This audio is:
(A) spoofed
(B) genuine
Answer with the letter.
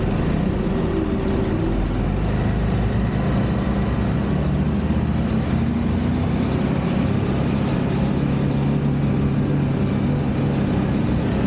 B